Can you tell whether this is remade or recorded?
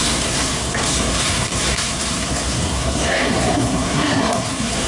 remade